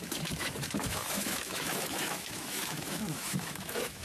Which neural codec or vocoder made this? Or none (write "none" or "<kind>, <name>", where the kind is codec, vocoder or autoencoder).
autoencoder, DAC-VAE